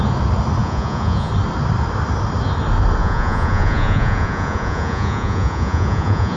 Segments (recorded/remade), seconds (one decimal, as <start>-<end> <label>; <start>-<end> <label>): 0.0-0.6 recorded; 0.6-1.3 remade; 1.3-3.0 recorded; 3.0-6.4 remade